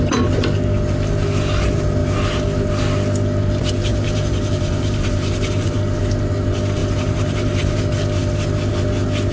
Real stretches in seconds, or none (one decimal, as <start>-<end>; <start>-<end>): 0.0-3.9; 6.0-6.8; 7.8-9.3